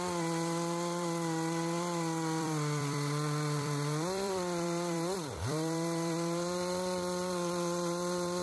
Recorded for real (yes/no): no